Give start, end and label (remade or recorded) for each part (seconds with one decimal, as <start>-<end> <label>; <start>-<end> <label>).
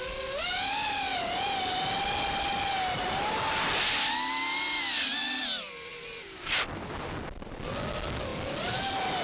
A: 0.0-9.2 recorded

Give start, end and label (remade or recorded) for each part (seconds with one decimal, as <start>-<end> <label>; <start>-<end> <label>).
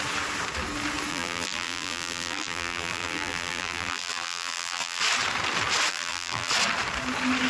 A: 0.0-1.1 recorded; 1.1-5.0 remade; 5.0-5.9 recorded; 5.9-6.5 remade; 6.5-7.5 recorded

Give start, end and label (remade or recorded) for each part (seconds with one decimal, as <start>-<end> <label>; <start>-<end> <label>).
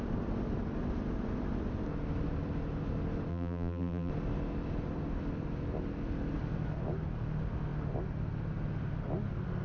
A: 0.0-3.3 recorded; 3.3-4.1 remade; 4.1-9.6 recorded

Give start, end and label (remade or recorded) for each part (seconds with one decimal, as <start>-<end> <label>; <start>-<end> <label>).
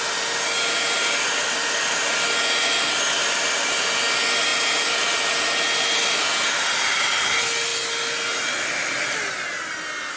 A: 0.0-3.2 recorded; 3.2-3.7 remade; 3.7-4.5 recorded; 4.5-5.1 remade; 5.1-10.2 recorded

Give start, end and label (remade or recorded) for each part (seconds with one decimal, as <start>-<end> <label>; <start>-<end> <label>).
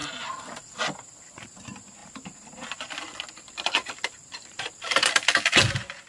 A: 0.0-0.8 remade; 0.8-2.0 recorded; 2.0-5.1 remade; 5.1-6.1 recorded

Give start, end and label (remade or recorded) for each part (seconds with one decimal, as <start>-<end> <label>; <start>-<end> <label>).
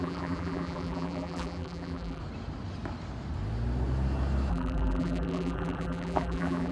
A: 0.0-2.2 remade; 2.2-4.5 recorded; 4.5-6.7 remade